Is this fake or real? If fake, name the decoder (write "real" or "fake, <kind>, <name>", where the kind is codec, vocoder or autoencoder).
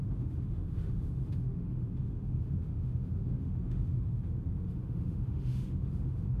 fake, autoencoder, DAC-VAE